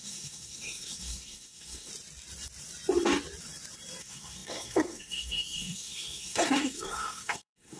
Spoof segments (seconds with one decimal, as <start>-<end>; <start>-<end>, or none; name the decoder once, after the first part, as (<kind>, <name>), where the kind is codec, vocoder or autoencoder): 0.0-1.9 (codec, SNAC); 4.0-7.8

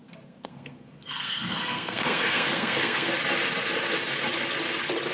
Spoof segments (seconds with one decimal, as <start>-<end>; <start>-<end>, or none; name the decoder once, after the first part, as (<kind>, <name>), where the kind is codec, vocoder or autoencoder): 0.0-3.1 (codec, SNAC)

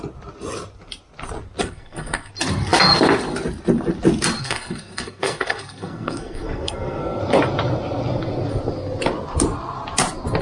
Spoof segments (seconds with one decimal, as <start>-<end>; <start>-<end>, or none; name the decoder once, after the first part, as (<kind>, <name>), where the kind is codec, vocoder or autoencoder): 1.6-2.3 (codec, SNAC); 4.4-7.2

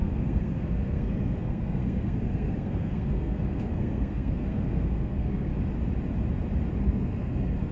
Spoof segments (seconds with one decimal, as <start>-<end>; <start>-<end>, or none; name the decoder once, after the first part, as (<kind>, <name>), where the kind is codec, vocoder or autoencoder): 0.0-5.5 (codec, SNAC); 6.8-7.7

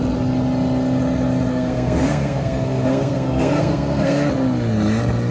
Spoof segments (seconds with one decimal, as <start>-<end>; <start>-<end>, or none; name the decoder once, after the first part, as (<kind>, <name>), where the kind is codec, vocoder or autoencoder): 1.5-4.3 (codec, SNAC)

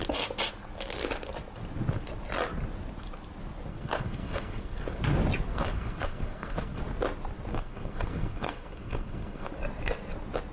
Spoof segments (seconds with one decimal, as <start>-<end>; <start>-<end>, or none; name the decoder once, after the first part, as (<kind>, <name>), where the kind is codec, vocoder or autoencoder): 3.7-5.0 (codec, SNAC); 5.5-6.8; 7.5-9.5